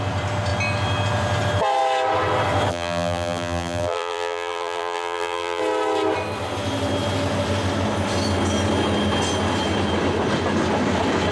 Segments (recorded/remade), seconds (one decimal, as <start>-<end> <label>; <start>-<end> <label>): 0.0-2.7 recorded; 2.7-5.6 remade; 5.6-11.3 recorded